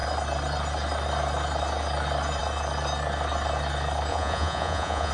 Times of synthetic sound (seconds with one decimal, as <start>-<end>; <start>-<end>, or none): 4.1-5.1

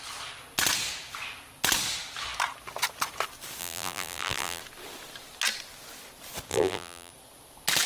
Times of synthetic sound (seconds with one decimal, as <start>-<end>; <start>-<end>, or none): 3.6-4.6; 6.5-7.1

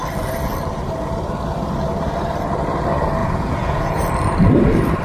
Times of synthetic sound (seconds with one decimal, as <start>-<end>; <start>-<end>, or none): 3.2-4.0

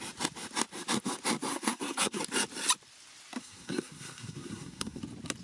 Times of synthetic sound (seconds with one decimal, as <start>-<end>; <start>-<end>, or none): 1.5-2.2; 3.4-5.0

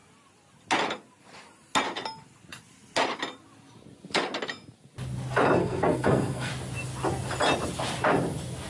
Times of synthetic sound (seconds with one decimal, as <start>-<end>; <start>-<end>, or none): 5.6-6.5

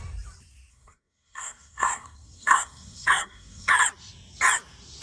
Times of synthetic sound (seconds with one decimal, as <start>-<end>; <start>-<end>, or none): 0.7-3.7